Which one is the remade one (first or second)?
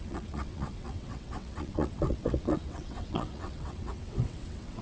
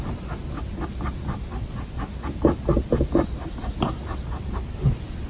first